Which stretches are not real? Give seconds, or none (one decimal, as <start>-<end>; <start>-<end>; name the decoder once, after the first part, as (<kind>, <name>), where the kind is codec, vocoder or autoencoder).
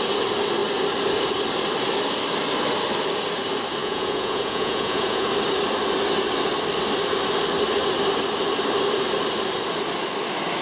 3.8-5.3 (vocoder, Vocos)